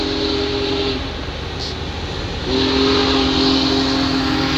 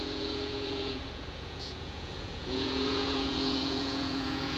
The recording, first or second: first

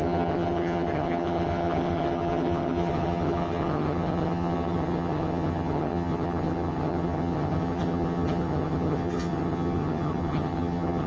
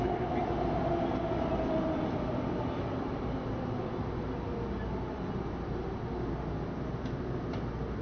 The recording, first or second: second